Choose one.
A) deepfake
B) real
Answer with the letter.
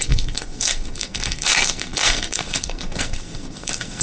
A